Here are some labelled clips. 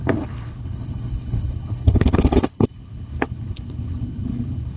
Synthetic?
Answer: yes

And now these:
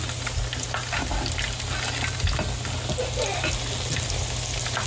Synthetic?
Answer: no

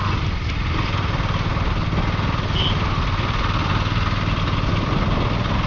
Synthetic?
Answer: no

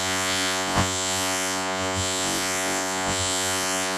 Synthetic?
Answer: yes